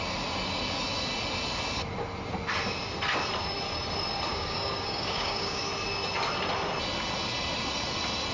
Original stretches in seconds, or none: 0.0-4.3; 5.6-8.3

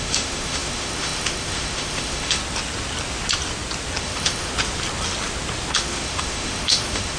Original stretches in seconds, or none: 2.4-4.0; 4.5-5.7

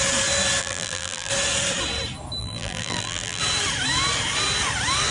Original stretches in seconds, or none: 0.0-0.6; 1.3-2.4; 3.4-5.1

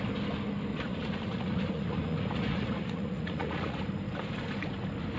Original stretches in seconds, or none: 0.0-0.7; 3.8-5.2

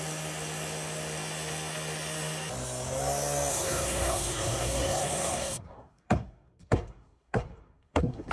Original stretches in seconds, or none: 0.0-3.5

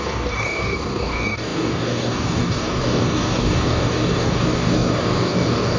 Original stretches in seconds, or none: none

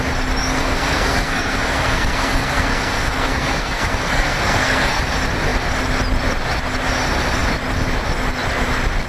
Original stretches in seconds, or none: 0.0-0.4; 5.0-9.1

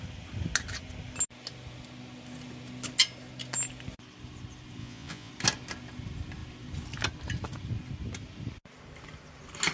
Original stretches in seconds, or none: 0.0-4.8; 5.3-9.7